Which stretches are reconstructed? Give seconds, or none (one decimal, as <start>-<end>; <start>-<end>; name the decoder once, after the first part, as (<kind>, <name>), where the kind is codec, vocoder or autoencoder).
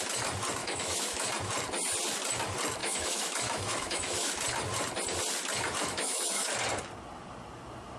0.6-1.3 (autoencoder, DAC-VAE); 2.8-4.3; 5.8-6.5